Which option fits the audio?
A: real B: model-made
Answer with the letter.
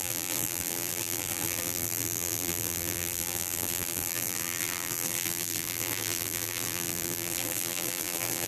B